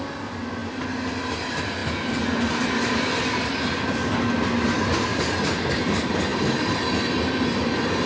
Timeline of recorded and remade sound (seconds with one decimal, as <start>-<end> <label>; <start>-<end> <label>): 0.0-5.1 recorded; 5.1-5.8 remade; 5.8-6.3 recorded; 6.3-6.8 remade; 6.8-8.1 recorded